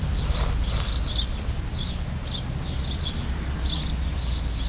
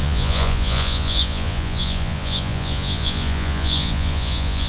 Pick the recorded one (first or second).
first